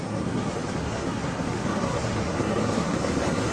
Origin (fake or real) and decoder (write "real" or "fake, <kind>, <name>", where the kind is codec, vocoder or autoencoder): fake, codec, SNAC